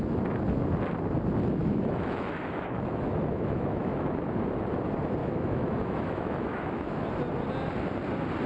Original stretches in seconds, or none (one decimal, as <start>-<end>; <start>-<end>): 0.0-1.6; 4.2-5.2; 7.1-8.5